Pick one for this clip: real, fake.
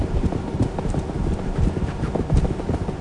real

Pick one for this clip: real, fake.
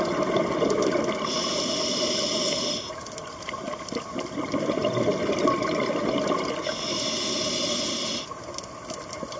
real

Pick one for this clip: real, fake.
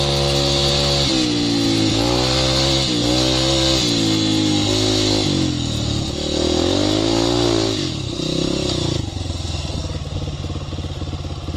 real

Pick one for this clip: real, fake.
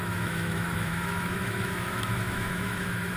fake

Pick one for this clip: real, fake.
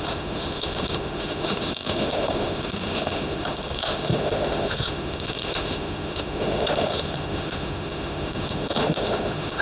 fake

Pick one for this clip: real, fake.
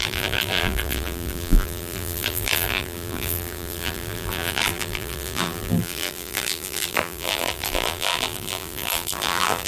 fake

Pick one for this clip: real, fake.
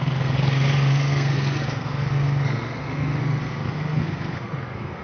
fake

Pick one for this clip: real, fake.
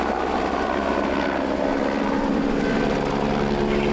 real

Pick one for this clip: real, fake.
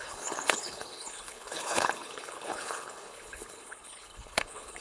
fake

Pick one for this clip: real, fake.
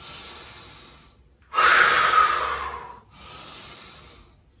real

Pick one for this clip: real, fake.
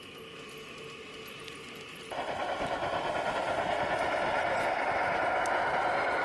real